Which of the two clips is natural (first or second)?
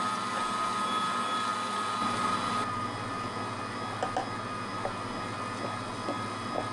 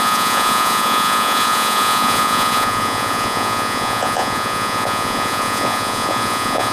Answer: first